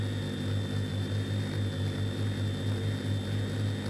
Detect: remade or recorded recorded